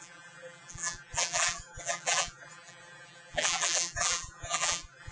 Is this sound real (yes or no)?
no